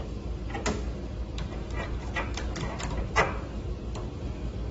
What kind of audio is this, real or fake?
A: real